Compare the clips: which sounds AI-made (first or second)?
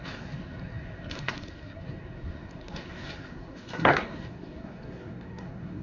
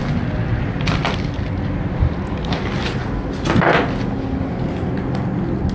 first